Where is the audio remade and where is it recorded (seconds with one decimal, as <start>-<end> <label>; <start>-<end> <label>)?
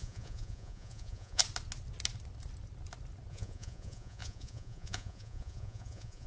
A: 0.0-1.4 remade; 1.4-3.3 recorded; 3.3-6.3 remade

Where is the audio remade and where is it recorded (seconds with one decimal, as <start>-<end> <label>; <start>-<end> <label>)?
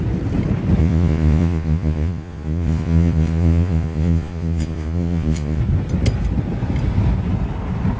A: 0.0-0.8 recorded; 0.8-5.6 remade; 5.6-8.0 recorded